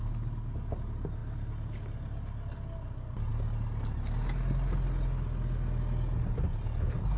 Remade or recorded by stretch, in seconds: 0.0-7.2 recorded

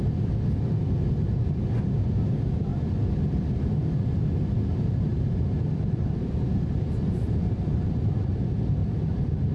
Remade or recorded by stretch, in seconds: 0.0-5.1 recorded; 5.1-8.3 remade; 8.3-8.8 recorded; 8.8-9.5 remade

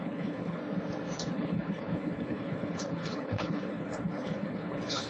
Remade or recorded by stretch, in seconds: 0.0-0.6 remade; 0.6-1.1 recorded; 1.1-5.1 remade

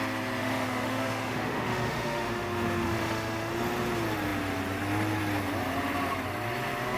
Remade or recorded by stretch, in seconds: 0.0-0.4 recorded; 0.4-3.5 remade; 3.5-7.0 recorded

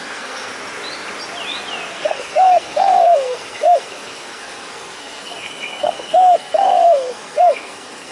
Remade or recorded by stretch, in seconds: 0.0-0.5 remade; 0.5-1.9 recorded; 1.9-8.1 remade